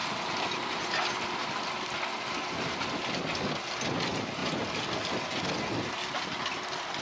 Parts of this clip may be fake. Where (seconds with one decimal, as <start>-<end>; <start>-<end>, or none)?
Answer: none